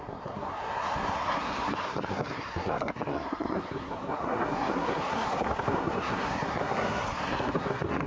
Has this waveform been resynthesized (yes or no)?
yes